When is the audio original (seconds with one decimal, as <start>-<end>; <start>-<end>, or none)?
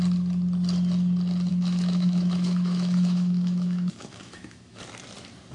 0.0-1.5; 4.8-5.5